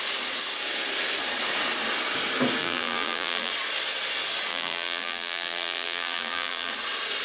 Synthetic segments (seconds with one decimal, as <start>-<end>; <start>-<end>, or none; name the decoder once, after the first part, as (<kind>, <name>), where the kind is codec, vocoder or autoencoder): 2.6-3.5 (vocoder, BigVGAN v2); 4.5-6.7